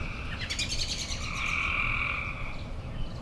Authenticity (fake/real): real